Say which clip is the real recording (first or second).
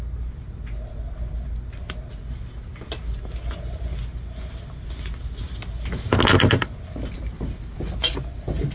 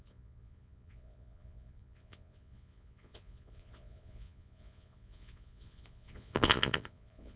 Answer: first